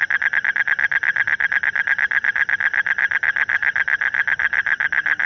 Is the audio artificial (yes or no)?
no